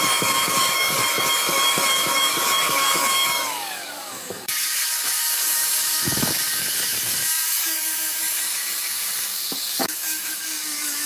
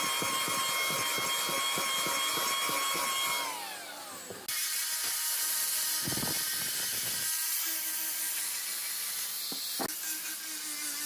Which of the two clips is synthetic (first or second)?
first